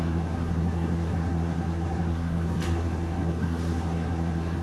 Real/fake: fake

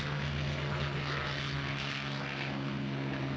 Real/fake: fake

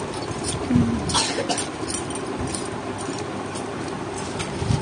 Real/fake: real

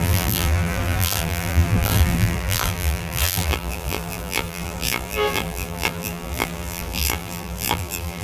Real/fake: fake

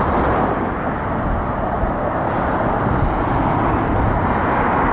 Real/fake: real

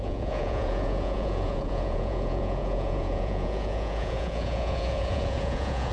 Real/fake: fake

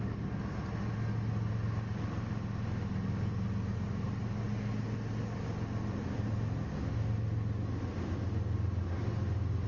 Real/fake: real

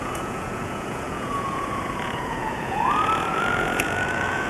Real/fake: fake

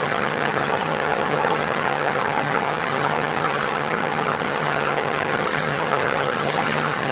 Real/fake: fake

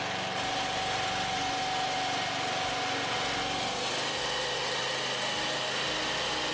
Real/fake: real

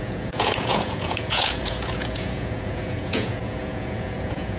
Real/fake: fake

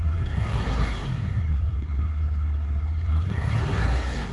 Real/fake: fake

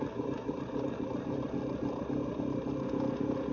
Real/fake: real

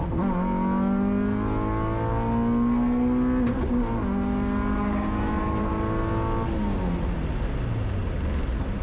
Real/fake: real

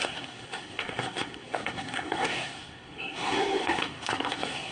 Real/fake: fake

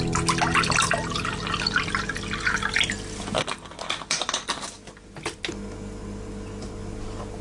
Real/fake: real